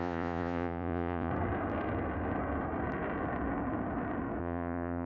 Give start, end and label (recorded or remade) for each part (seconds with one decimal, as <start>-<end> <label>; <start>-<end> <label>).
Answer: 0.0-1.3 remade; 1.3-4.4 recorded; 4.4-5.1 remade